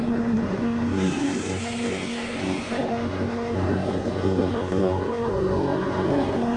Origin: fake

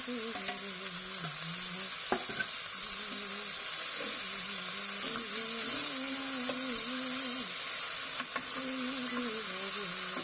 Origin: real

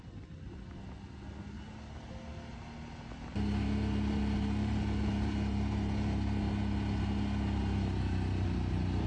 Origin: real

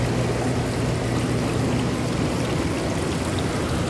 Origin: real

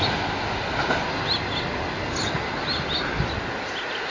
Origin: real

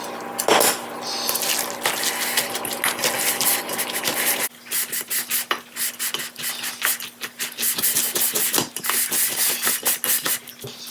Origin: real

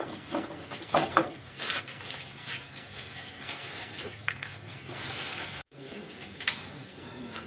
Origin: fake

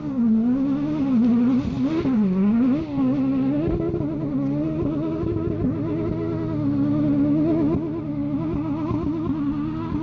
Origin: real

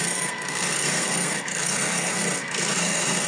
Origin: fake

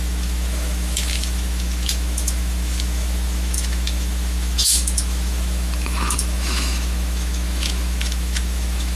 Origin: fake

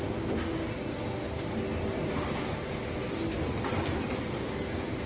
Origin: real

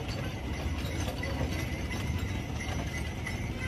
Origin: real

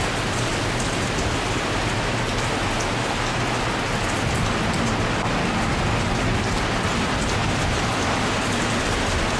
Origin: real